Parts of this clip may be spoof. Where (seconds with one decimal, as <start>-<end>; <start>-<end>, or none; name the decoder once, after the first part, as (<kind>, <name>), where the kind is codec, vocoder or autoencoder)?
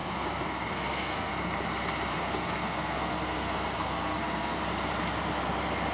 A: 0.0-1.3 (codec, SNAC); 2.1-4.6